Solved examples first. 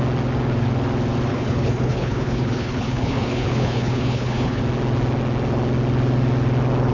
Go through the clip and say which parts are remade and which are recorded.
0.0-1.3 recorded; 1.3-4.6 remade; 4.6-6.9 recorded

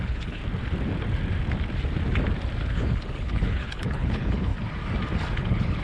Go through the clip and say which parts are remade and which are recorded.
0.0-0.4 remade; 0.4-2.7 recorded; 2.7-4.5 remade; 4.5-5.3 recorded; 5.3-5.8 remade